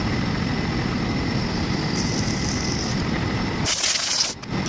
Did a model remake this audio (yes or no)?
no